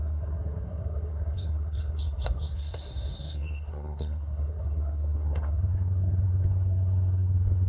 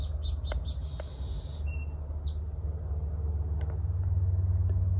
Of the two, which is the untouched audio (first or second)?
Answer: second